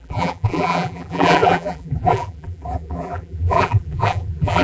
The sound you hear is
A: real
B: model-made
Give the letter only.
B